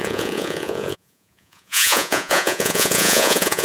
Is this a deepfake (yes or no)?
yes